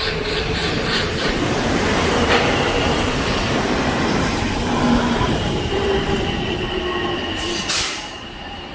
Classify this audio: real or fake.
fake